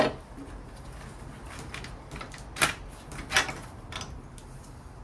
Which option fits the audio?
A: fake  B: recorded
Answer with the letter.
B